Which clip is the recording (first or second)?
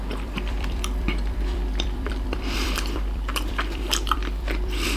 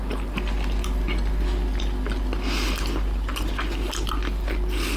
second